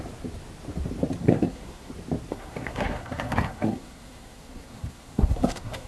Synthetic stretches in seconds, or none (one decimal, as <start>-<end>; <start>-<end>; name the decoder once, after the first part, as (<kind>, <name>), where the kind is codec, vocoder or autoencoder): 1.2-1.9 (codec, SNAC); 2.3-5.9